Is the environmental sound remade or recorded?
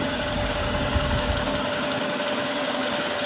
remade